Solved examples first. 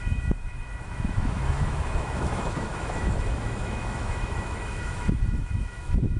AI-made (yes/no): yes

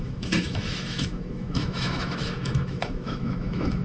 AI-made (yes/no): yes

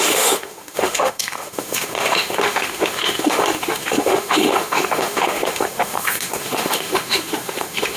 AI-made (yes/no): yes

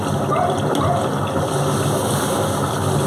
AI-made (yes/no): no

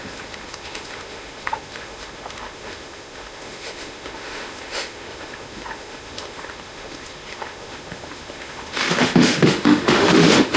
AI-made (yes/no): yes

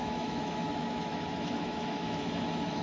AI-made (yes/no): yes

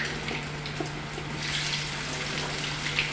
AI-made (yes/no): no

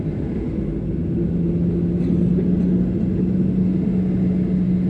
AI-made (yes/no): no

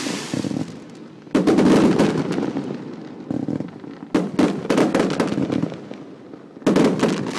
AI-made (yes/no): no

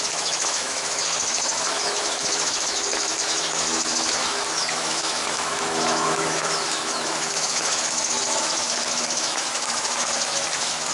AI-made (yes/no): yes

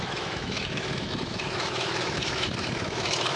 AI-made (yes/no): yes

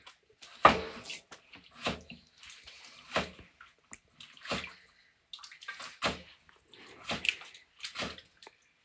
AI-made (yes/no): no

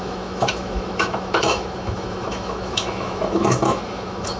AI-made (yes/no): yes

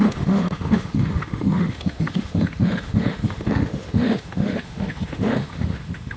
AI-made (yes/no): yes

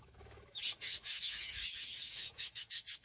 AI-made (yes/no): yes